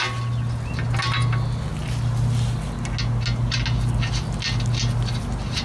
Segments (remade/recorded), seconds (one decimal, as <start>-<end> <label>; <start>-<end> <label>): 0.0-5.6 recorded